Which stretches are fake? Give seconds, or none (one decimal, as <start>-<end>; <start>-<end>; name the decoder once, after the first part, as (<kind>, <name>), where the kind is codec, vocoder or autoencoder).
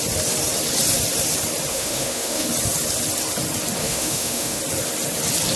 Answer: 1.7-2.5 (autoencoder, DAC-VAE); 3.8-4.6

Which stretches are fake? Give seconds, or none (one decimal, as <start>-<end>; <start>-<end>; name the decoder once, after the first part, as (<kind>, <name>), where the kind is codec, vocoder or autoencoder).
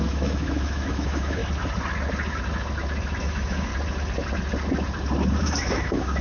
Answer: 0.0-1.4 (autoencoder, DAC-VAE); 3.2-3.7; 5.4-6.2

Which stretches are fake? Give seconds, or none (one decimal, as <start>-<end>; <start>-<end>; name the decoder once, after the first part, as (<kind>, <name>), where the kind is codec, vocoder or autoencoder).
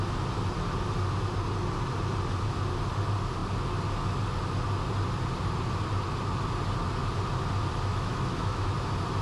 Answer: 7.9-8.7 (autoencoder, DAC-VAE)